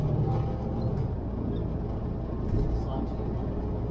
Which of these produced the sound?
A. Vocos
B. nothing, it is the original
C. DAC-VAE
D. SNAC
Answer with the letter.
B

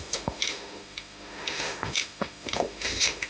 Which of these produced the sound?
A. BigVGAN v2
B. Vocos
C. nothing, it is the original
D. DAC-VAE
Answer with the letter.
D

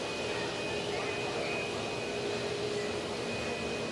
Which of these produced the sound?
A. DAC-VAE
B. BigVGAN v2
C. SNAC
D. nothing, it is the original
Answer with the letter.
D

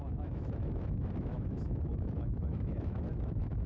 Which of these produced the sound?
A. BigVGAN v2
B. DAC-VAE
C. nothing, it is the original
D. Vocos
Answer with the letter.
B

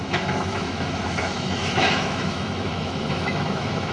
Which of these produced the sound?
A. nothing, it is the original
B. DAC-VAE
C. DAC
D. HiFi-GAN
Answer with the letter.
B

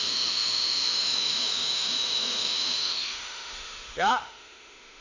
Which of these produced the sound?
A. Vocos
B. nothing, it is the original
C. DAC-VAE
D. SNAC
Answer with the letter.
C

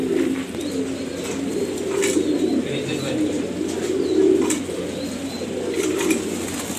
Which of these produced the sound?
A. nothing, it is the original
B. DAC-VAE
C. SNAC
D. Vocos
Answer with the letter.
A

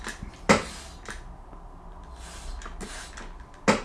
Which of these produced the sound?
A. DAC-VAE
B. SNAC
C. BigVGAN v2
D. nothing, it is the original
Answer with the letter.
D